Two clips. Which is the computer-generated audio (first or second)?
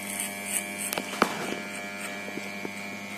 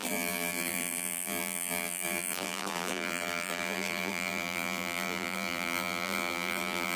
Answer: second